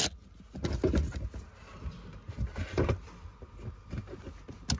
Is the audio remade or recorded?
recorded